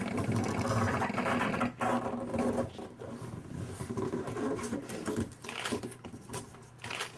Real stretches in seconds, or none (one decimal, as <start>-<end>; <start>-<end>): 0.0-2.3; 2.9-7.2